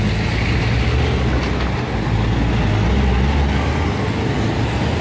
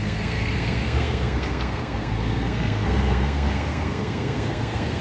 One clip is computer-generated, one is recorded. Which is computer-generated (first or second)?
second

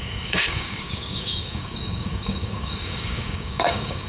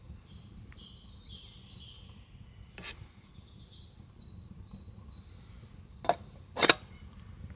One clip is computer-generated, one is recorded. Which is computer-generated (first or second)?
first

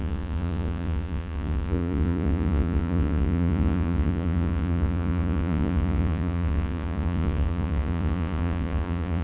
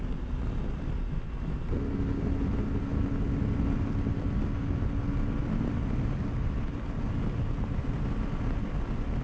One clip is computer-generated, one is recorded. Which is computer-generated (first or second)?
first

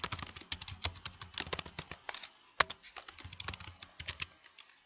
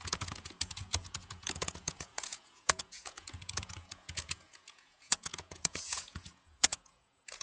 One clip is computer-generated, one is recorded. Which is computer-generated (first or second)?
second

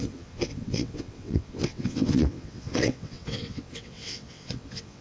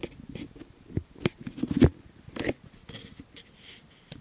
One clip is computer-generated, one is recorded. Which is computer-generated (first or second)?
first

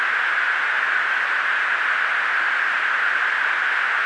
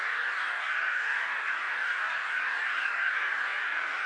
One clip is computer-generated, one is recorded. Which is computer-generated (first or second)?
second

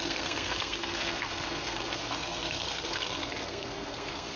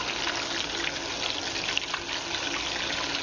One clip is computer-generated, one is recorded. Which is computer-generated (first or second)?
first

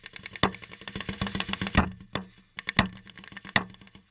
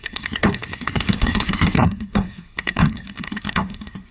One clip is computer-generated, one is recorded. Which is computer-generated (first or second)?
second